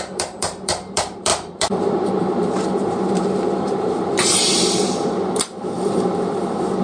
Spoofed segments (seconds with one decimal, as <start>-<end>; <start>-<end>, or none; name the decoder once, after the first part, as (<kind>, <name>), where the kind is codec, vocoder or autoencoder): 0.0-6.8 (vocoder, BigVGAN v2)